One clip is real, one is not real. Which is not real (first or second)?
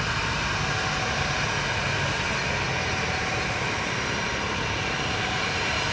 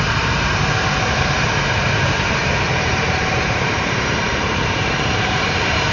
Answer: second